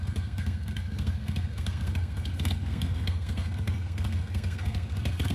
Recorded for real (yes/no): no